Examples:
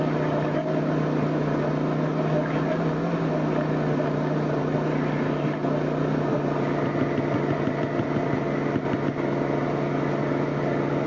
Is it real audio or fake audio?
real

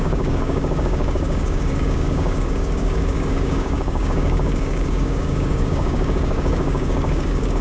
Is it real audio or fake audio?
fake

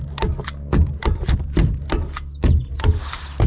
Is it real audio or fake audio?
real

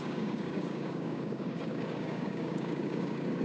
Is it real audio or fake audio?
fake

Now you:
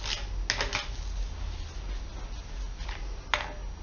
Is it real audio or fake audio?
real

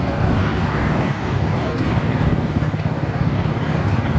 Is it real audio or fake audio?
fake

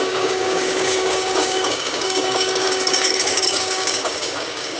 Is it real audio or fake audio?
fake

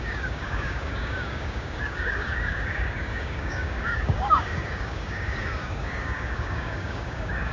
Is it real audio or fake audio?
fake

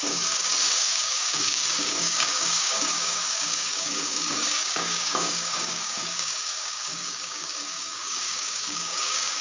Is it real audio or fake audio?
fake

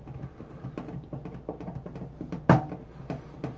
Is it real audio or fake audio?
real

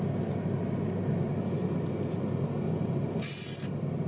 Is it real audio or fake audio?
real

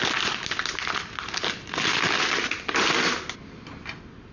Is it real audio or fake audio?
real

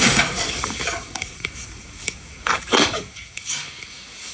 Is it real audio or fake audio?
fake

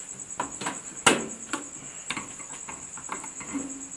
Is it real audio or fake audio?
real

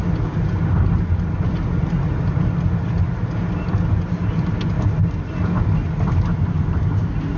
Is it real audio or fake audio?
real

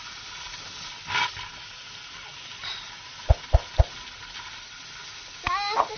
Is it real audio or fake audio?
real